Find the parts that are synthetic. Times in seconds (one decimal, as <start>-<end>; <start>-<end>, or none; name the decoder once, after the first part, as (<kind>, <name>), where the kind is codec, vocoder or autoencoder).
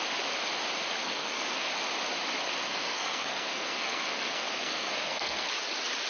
1.0-1.7 (codec, SNAC); 2.6-5.5